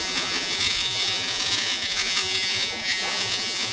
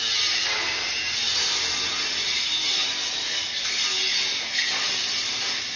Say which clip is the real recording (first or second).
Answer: second